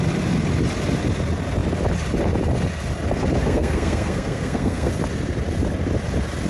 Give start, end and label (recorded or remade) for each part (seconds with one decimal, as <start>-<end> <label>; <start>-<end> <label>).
0.0-3.4 recorded; 3.4-4.9 remade; 4.9-6.5 recorded